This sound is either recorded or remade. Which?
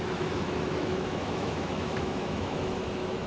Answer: remade